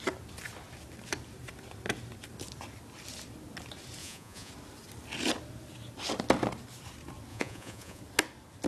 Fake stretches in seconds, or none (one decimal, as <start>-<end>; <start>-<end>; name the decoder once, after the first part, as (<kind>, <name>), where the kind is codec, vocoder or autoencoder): 4.0-4.5 (vocoder, Vocos); 7.3-8.0